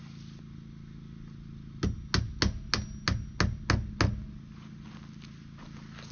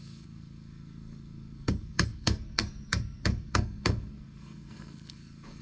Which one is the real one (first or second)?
first